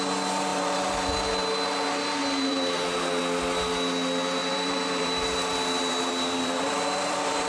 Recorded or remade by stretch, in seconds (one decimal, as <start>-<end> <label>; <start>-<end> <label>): 0.0-0.5 recorded; 0.5-1.1 remade; 1.1-2.2 recorded; 2.2-3.2 remade; 3.2-4.4 recorded; 4.4-7.5 remade